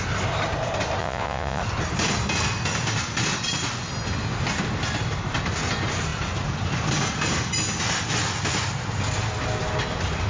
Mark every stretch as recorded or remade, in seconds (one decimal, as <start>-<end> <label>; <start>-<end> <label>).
0.0-1.0 recorded; 1.0-1.6 remade; 1.6-10.3 recorded